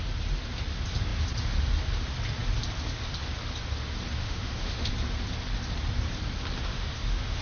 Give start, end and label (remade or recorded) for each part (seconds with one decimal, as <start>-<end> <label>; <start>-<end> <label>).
0.0-4.2 recorded; 4.2-4.9 remade; 4.9-6.7 recorded; 6.7-7.4 remade